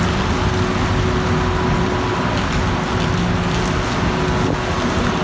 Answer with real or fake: real